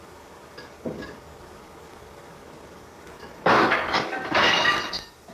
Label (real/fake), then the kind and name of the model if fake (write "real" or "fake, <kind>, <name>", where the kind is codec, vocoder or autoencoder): fake, codec, DAC